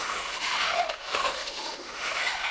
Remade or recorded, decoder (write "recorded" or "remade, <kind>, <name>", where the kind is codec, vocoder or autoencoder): remade, autoencoder, DAC-VAE